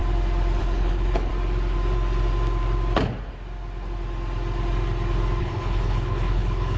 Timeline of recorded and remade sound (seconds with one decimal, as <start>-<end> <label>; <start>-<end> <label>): 0.0-0.6 recorded; 0.6-1.3 remade; 1.3-5.4 recorded; 5.4-6.8 remade